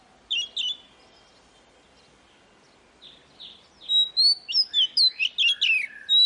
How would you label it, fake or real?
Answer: real